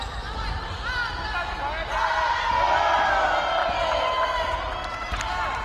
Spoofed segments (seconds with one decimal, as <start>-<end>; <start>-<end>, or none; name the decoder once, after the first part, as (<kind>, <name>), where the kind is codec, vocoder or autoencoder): 3.6-4.6 (vocoder, BigVGAN v2)